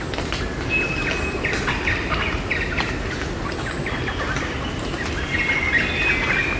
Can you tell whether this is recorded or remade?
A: recorded